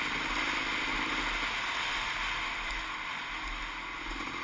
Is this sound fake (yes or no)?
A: no